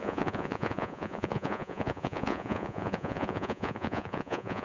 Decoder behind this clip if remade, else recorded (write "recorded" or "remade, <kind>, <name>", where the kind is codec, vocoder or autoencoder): remade, vocoder, Vocos